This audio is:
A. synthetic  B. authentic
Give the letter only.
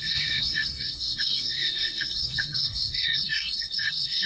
A